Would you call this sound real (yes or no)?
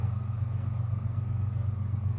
no